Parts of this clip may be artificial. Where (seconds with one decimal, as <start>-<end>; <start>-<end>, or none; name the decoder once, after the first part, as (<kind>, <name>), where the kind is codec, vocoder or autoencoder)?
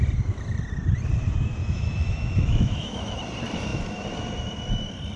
1.6-3.2 (autoencoder, DAC-VAE)